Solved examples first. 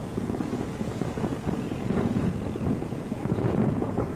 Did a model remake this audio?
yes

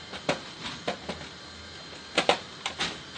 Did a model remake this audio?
no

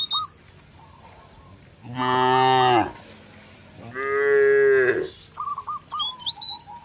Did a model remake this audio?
no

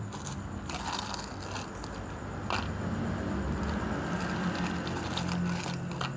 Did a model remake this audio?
no